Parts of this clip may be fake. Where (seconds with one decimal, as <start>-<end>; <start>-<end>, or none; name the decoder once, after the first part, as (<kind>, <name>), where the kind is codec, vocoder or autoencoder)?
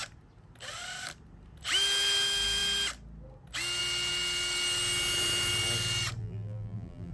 6.2-7.1 (vocoder, BigVGAN v2)